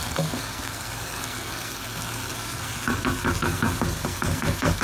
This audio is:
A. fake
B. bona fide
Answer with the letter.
A